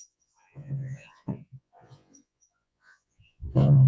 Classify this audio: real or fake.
fake